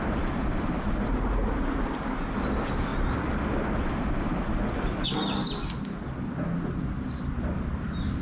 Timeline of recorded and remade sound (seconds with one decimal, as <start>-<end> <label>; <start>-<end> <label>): 0.0-1.1 remade; 1.1-8.2 recorded